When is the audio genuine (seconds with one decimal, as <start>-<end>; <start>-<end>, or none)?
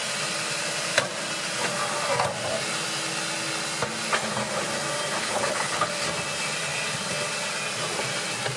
0.0-5.2; 5.9-8.6